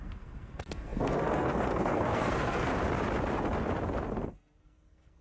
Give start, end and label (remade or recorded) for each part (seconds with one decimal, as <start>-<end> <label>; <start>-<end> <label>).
0.0-2.7 remade; 2.7-4.3 recorded; 4.3-5.2 remade